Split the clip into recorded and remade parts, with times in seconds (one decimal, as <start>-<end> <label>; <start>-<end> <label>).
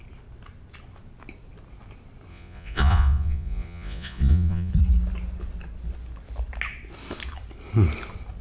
0.0-2.3 recorded; 2.3-4.7 remade; 4.7-8.4 recorded